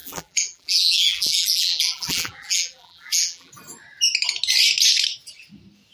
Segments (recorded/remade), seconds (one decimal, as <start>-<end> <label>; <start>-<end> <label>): 0.0-3.5 remade; 3.5-5.9 recorded